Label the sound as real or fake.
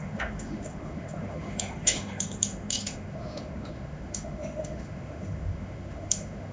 fake